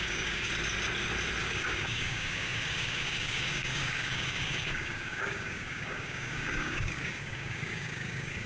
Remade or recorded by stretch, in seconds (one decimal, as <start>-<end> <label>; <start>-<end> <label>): 0.0-0.5 remade; 0.5-1.4 recorded; 1.4-8.5 remade